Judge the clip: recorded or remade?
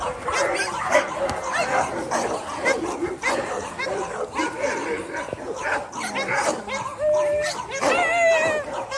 recorded